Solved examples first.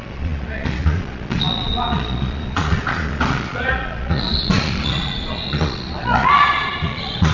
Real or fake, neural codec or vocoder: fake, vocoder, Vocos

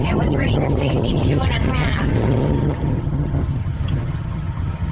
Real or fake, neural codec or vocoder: fake, vocoder, HiFi-GAN